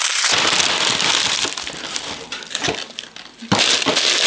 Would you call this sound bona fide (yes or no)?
yes